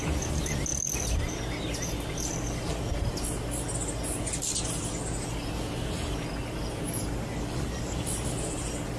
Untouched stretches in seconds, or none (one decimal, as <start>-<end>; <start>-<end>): 0.0-9.0